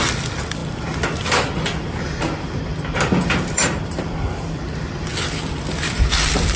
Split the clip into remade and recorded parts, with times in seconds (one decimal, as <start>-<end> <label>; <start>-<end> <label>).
0.0-0.6 remade; 0.6-2.2 recorded; 2.2-2.7 remade; 2.7-3.3 recorded; 3.3-5.1 remade; 5.1-6.1 recorded; 6.1-6.6 remade